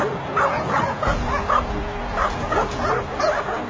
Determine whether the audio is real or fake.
real